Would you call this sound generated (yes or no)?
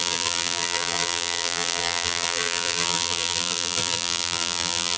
yes